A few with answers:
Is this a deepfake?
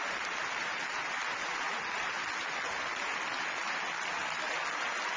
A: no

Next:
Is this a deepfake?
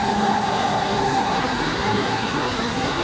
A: yes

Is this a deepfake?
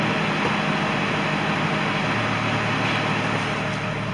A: no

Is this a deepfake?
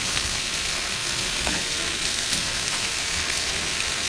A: yes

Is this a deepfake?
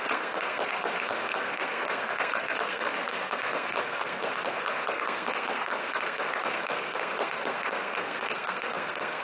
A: yes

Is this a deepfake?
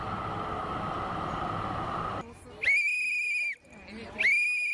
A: no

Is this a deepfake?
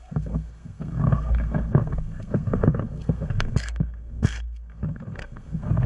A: yes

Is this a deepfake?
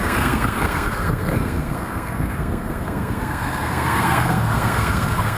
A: yes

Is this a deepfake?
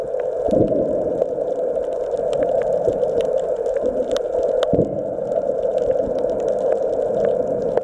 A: no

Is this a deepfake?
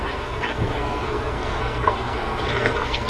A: yes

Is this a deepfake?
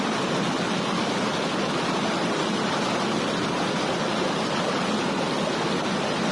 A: no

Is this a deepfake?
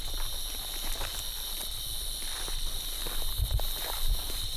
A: no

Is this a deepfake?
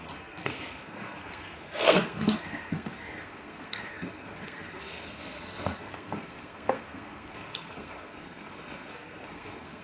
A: yes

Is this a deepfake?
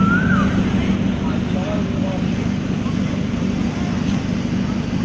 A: no